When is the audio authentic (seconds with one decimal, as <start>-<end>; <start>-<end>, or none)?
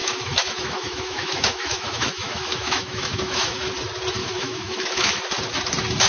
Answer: 3.7-4.2; 5.2-6.1